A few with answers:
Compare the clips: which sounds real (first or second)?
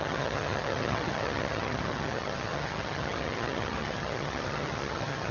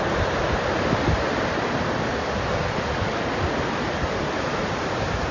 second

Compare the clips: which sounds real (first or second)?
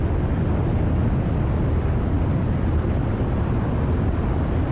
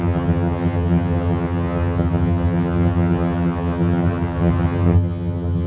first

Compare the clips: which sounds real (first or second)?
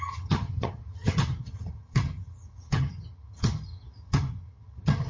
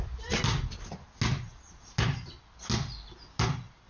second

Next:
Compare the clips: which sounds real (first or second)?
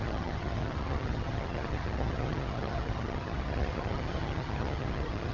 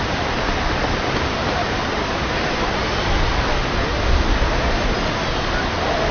second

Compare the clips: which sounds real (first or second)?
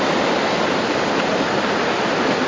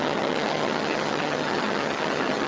first